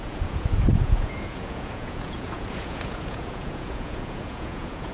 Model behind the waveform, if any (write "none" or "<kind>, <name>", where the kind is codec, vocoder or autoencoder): vocoder, Vocos